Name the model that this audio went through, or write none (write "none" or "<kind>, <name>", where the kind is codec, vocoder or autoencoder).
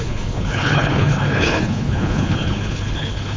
codec, HILCodec